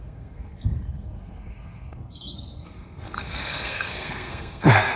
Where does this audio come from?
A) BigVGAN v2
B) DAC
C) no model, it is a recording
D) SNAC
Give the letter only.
D